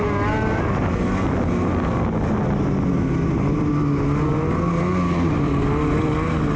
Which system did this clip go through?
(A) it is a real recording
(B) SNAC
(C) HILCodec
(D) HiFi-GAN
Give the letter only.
A